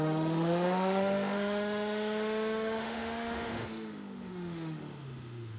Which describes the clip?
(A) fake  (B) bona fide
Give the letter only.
A